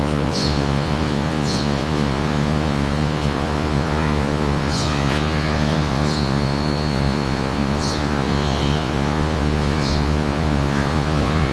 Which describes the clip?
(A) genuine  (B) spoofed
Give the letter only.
B